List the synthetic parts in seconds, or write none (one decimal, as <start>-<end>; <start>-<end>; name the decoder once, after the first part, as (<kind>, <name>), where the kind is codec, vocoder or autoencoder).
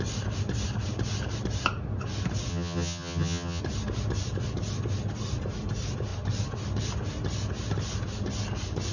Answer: 2.5-3.6 (vocoder, HiFi-GAN)